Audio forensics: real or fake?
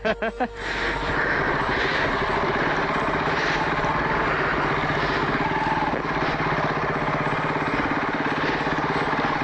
real